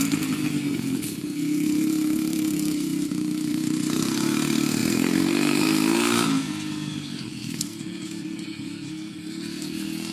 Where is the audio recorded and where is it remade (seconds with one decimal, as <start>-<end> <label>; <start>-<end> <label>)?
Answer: 0.0-10.1 remade